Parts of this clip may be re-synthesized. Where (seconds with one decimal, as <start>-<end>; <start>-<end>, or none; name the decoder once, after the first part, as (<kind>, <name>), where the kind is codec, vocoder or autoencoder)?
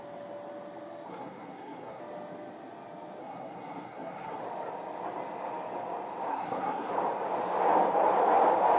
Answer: 1.1-2.0 (codec, SNAC); 3.2-4.4; 6.3-6.9